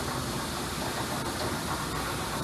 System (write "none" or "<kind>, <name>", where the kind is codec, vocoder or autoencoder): vocoder, BigVGAN v2